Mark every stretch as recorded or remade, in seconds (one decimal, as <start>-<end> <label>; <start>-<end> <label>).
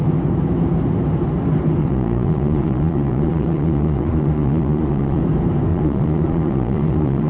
0.0-1.8 recorded; 1.8-5.2 remade; 5.2-5.7 recorded; 5.7-7.3 remade